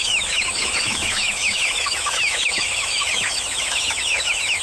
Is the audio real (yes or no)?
no